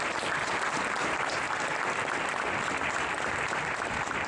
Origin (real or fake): real